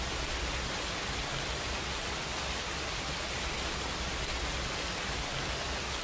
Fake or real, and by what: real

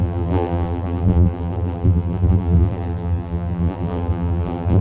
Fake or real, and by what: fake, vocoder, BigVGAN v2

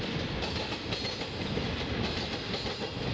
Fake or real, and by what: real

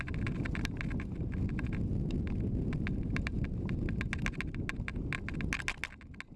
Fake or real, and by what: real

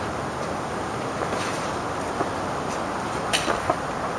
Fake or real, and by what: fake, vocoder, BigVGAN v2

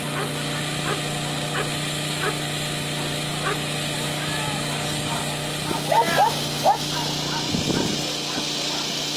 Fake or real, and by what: real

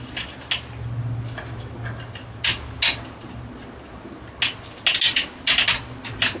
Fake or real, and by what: real